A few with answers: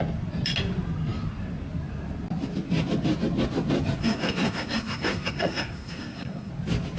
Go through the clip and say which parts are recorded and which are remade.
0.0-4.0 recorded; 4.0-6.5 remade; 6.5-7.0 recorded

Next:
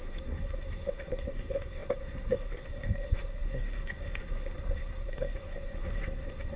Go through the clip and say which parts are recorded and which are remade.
0.0-6.6 remade

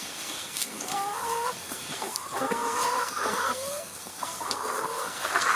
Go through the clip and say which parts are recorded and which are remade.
0.0-5.6 remade